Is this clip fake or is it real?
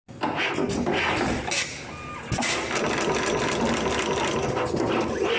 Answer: real